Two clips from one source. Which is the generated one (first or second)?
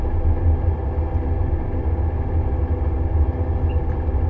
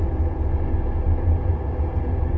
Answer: second